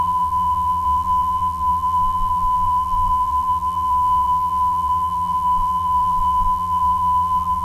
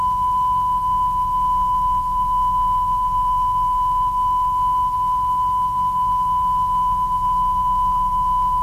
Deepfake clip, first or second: first